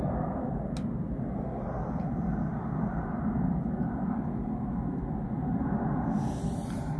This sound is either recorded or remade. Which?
recorded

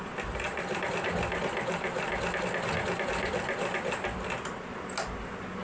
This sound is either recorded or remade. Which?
recorded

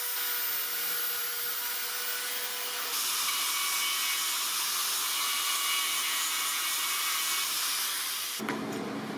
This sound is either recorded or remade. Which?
recorded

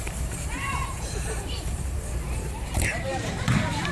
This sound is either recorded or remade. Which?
remade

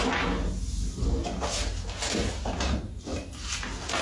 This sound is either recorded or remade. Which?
recorded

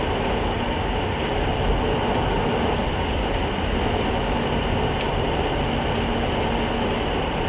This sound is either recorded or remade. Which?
recorded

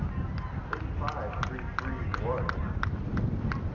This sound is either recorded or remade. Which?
recorded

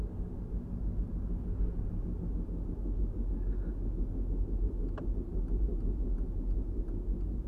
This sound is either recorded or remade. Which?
recorded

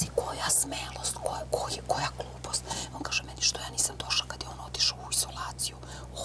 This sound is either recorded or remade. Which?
recorded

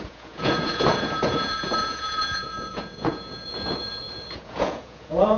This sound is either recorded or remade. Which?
remade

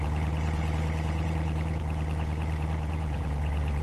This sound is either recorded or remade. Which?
remade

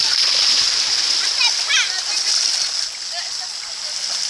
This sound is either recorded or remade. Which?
recorded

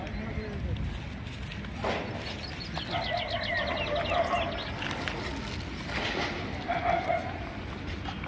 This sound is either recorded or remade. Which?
recorded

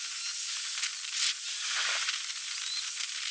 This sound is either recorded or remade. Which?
recorded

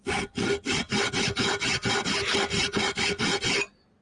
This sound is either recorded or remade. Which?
recorded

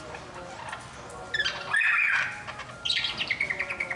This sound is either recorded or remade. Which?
recorded